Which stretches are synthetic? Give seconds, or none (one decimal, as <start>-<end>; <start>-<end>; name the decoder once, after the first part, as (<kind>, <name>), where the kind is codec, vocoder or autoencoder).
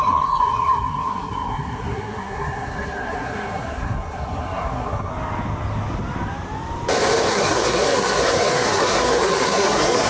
0.0-5.1 (codec, SNAC); 7.3-10.1